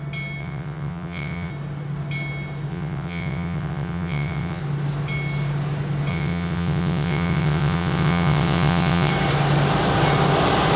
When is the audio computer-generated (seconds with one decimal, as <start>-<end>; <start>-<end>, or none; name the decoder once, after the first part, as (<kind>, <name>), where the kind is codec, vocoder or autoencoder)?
0.4-1.5 (vocoder, WaveNeXt); 2.7-4.6; 6.1-9.1